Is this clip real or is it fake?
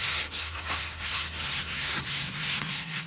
fake